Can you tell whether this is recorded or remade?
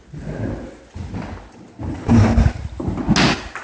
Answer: recorded